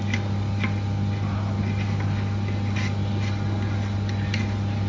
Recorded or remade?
recorded